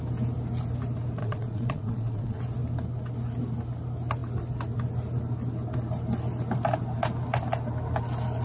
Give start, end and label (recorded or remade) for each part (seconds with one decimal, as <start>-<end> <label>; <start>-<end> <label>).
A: 0.0-1.2 recorded; 1.2-2.4 remade; 2.4-8.4 recorded